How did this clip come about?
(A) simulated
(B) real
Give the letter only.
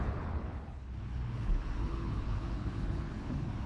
A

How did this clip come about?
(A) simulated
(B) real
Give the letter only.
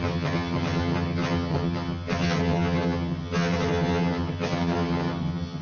A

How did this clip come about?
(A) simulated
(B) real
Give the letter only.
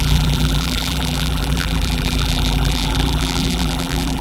A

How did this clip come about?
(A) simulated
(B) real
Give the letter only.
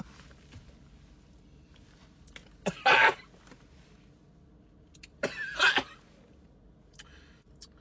B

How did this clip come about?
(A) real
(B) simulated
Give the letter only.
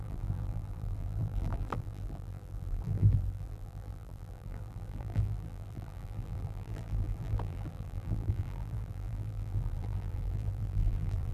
B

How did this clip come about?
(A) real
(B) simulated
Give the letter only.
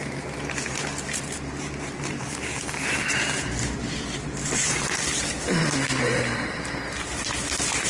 B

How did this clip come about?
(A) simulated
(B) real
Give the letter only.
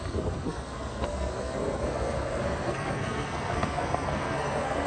A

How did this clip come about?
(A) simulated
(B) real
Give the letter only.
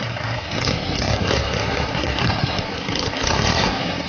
A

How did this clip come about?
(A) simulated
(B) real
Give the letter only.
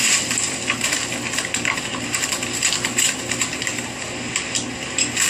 B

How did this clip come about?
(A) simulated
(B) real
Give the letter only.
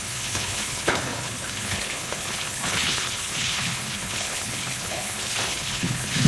A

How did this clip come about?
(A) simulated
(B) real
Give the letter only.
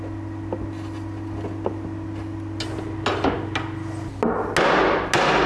B